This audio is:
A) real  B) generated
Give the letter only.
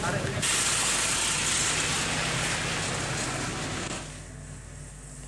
A